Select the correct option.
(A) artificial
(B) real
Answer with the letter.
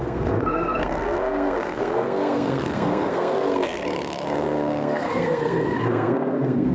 A